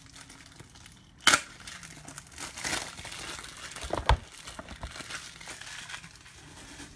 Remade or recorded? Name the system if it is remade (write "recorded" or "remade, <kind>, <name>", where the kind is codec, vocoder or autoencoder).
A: recorded